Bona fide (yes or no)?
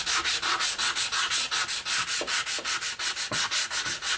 yes